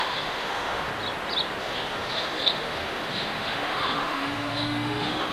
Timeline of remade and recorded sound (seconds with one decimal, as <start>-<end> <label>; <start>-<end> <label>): 0.0-0.9 remade; 0.9-1.6 recorded; 1.6-5.3 remade